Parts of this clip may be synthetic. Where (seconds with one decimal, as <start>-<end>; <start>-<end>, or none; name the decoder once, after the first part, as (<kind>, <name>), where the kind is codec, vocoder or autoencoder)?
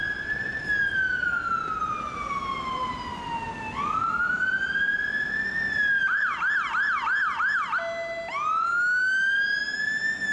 none